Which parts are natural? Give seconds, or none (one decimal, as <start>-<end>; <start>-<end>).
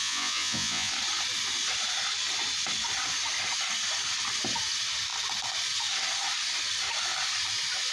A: 0.9-7.9